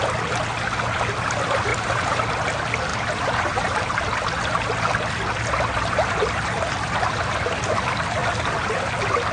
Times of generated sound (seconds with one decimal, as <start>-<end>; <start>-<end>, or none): 1.7-2.2; 2.9-4.1